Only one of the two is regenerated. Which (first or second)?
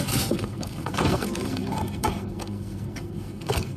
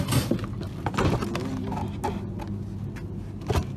first